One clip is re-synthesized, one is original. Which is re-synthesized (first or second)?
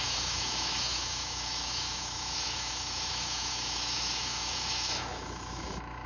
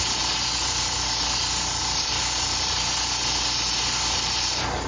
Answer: first